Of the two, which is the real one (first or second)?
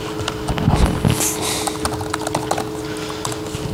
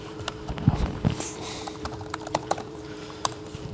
first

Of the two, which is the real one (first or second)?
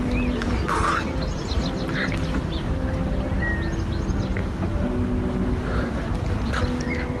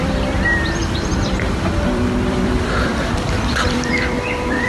first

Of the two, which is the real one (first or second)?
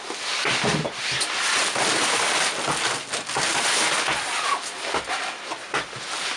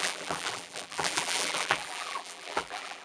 first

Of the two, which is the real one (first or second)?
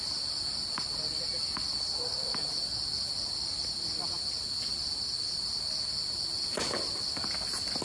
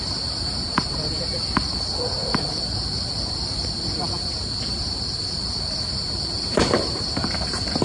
first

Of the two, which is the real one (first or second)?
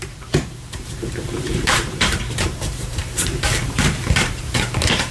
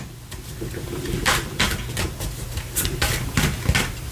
second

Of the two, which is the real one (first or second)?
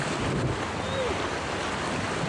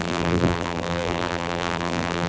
first